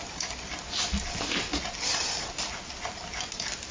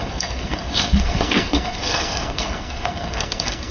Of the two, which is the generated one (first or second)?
second